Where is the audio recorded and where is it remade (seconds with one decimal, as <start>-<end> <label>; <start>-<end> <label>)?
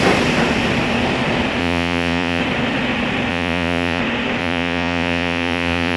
0.0-1.6 recorded; 1.6-2.4 remade; 2.4-3.3 recorded; 3.3-4.0 remade; 4.0-4.4 recorded; 4.4-6.0 remade